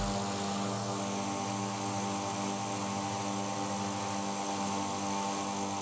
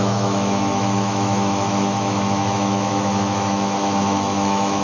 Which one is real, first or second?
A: first